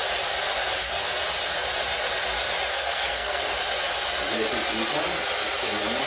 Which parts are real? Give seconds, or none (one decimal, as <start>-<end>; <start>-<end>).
0.0-2.7; 3.5-6.1